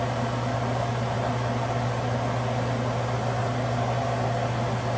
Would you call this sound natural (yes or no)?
yes